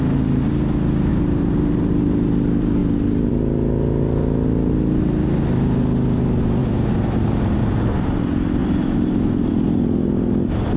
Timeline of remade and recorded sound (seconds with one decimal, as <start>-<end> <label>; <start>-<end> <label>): 0.0-1.1 recorded; 1.1-1.9 remade; 1.9-6.6 recorded; 6.6-8.2 remade; 8.2-8.6 recorded; 8.6-9.5 remade; 9.5-10.8 recorded